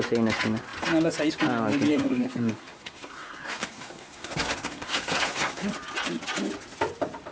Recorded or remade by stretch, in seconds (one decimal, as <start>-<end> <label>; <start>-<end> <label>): 0.0-1.9 recorded; 1.9-5.7 remade; 5.7-7.3 recorded